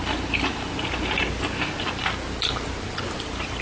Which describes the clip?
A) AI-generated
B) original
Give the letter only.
A